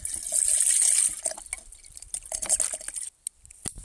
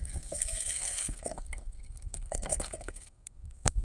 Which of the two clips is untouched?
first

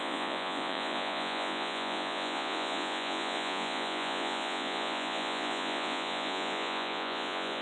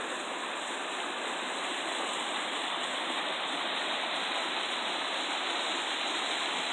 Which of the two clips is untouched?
second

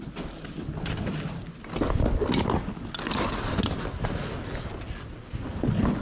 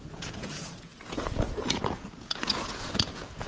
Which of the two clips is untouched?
first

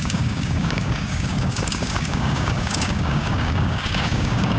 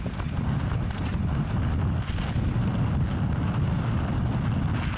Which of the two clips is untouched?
second